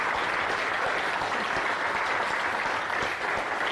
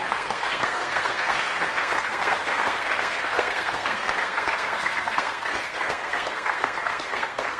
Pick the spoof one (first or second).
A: second